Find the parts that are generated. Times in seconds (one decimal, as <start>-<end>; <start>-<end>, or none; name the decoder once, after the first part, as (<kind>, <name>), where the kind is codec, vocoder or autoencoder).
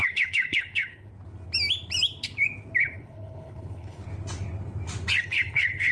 0.0-1.1 (codec, HILCodec); 2.8-4.0; 5.2-5.9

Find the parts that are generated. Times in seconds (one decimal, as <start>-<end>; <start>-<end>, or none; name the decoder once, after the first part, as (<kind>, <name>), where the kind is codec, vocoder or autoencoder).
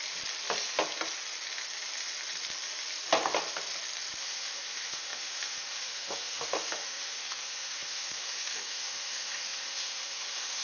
4.2-10.6 (autoencoder, DAC-VAE)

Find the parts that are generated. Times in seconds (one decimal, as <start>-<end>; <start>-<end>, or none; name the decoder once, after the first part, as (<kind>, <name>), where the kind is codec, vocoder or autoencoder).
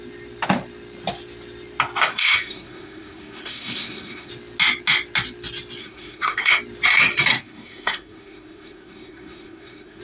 2.1-4.3 (codec, SNAC); 5.8-6.5; 7.3-10.0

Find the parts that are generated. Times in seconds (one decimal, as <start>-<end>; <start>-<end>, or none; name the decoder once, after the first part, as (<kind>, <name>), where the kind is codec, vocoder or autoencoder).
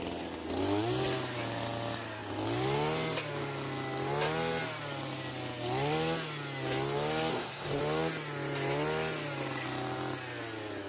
7.3-7.8 (codec, SNAC)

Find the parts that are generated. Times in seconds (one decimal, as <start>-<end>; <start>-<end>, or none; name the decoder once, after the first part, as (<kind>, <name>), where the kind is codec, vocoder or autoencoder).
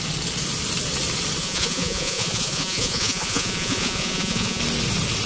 1.4-4.6 (vocoder, Vocos)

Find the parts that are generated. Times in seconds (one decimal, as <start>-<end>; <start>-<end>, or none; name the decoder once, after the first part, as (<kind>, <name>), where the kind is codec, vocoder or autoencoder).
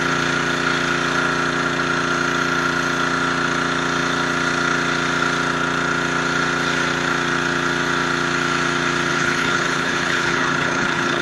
9.1-11.2 (codec, HILCodec)